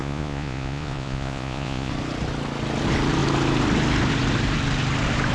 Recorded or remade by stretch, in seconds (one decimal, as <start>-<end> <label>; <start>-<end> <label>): 0.0-1.9 remade; 1.9-5.3 recorded